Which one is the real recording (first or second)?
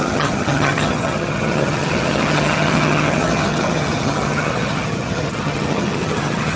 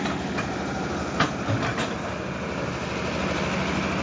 second